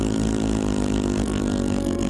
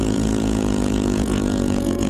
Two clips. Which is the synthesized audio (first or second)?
second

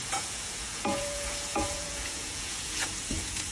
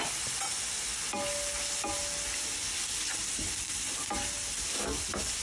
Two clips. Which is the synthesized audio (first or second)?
first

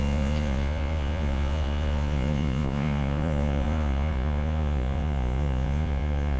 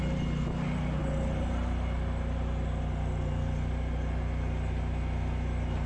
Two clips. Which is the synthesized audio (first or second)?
first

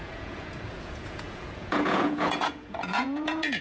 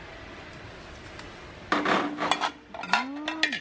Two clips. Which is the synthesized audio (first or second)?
first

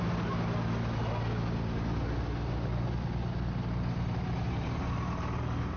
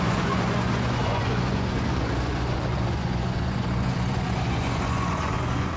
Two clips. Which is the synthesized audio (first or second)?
second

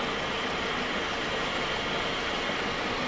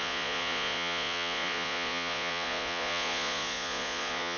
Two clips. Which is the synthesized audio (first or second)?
second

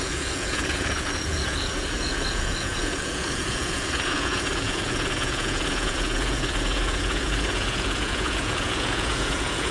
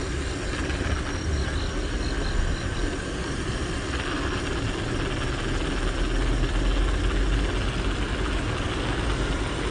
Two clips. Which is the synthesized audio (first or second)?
first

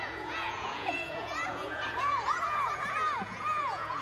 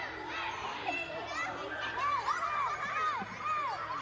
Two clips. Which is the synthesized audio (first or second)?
first